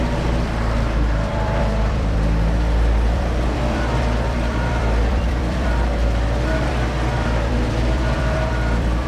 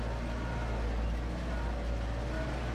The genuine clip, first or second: second